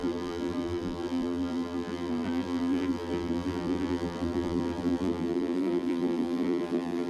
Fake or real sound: fake